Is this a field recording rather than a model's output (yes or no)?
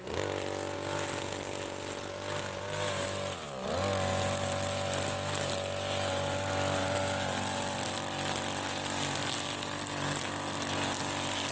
yes